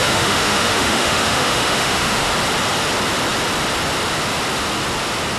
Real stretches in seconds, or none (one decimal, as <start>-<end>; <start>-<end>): 2.3-5.4